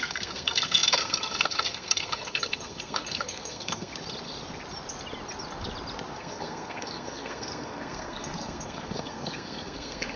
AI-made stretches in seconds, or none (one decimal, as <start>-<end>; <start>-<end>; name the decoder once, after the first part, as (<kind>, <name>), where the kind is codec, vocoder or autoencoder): 0.0-3.9 (codec, SNAC); 6.2-10.2